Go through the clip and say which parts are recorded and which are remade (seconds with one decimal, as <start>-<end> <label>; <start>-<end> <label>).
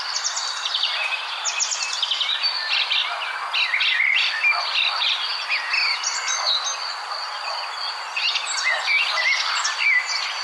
0.0-10.4 recorded